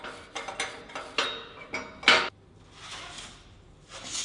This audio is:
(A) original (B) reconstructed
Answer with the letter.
A